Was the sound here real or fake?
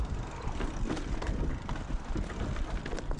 real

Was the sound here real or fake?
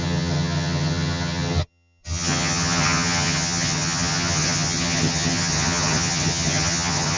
fake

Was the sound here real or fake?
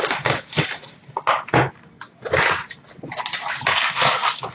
real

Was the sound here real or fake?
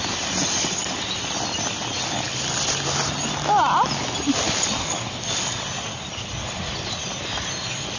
real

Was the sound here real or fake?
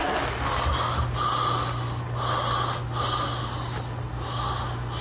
real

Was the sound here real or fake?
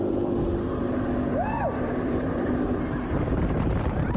fake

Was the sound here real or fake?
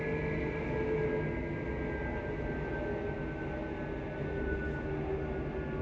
real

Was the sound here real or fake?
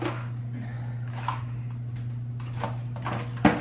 real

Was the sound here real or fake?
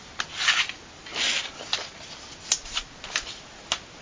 real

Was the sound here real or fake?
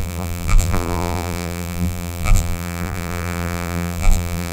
fake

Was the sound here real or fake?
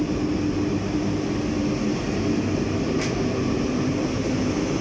real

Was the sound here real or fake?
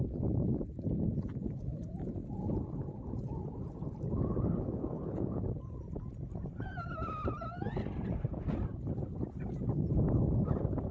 real